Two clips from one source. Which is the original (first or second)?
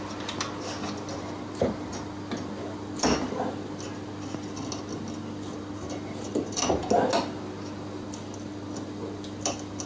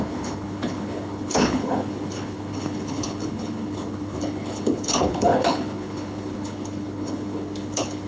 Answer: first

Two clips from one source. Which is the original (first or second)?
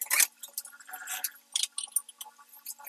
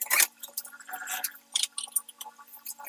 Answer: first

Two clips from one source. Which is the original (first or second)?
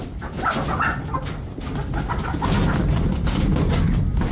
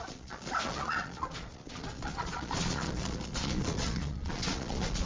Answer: first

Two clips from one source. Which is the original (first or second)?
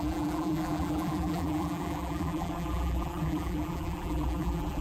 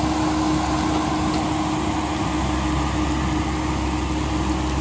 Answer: second